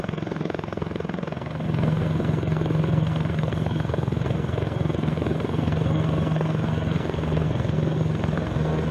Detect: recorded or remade remade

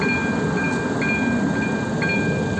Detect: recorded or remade recorded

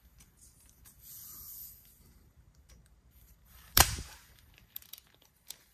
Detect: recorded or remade remade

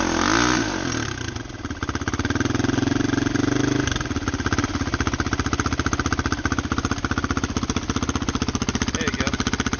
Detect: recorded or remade recorded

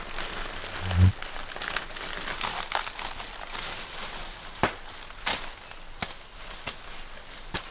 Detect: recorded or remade recorded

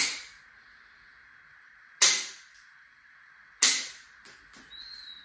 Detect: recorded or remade recorded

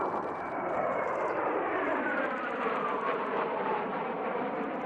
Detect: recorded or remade remade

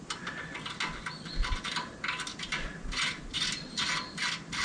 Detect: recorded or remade recorded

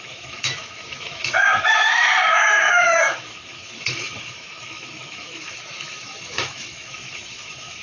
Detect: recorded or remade remade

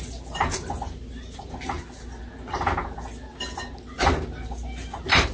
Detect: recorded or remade recorded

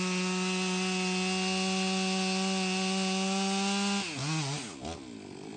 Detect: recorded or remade recorded